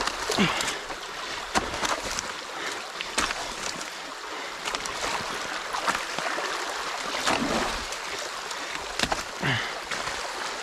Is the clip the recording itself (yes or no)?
yes